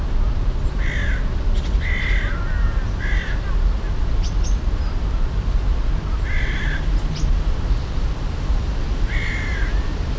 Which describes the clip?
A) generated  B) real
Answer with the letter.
B